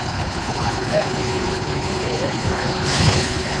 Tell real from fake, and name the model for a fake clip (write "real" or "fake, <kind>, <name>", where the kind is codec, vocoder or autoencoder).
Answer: fake, codec, HILCodec